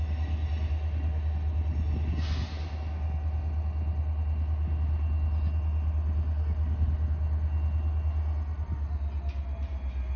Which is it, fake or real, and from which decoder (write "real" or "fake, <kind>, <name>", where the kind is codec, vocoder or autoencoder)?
real